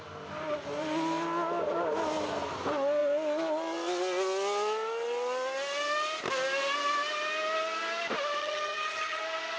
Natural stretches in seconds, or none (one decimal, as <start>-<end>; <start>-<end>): 0.0-8.4; 9.2-9.6